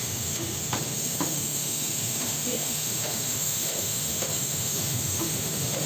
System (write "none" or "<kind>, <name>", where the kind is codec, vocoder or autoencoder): autoencoder, DAC-VAE